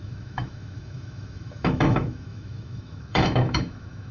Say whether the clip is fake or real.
fake